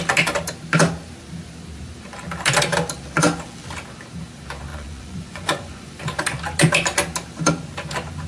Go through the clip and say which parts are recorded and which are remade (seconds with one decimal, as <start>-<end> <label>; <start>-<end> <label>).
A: 0.0-4.7 recorded; 4.7-6.0 remade; 6.0-8.3 recorded